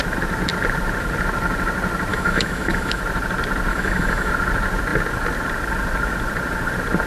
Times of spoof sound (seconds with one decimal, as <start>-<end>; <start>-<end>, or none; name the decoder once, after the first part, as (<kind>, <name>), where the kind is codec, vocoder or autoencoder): 2.1-3.0 (autoencoder, DAC-VAE); 3.7-4.3